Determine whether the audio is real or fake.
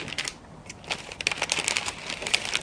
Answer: real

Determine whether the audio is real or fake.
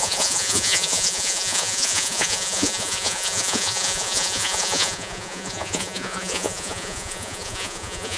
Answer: fake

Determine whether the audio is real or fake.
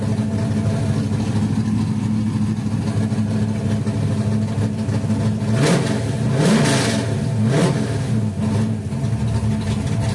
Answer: real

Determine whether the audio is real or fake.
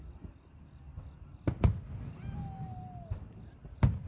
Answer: real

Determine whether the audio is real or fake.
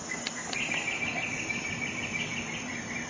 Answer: real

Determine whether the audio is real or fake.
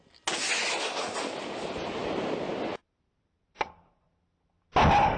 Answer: real